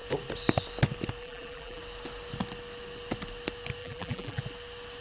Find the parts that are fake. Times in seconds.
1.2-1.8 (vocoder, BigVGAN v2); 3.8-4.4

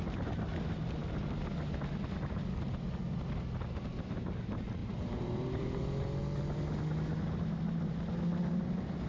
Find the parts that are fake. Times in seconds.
4.8-5.8 (vocoder, BigVGAN v2)